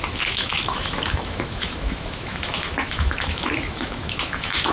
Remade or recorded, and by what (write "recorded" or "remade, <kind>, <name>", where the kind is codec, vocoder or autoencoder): remade, autoencoder, DAC-VAE